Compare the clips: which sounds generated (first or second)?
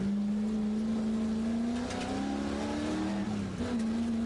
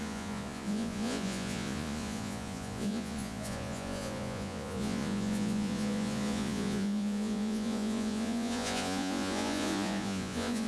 second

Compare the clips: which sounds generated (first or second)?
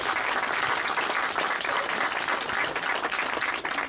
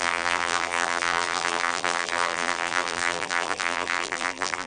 second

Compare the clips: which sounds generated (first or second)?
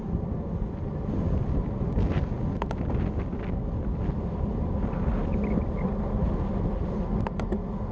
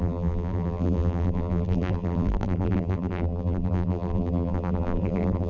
second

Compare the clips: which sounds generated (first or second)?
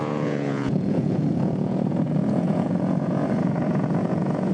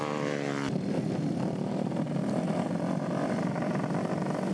first